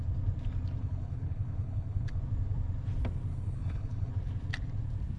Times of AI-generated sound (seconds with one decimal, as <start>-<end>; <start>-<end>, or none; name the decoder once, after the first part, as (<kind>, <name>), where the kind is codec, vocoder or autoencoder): 0.8-2.2 (codec, HILCodec); 3.3-4.1